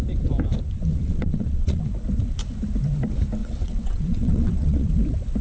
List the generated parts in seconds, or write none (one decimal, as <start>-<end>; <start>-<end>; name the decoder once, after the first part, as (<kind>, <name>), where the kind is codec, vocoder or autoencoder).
0.9-1.8 (vocoder, WaveNeXt); 3.4-4.9